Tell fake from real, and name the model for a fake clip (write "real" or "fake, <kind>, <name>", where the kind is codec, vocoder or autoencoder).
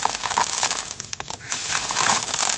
fake, autoencoder, DAC-VAE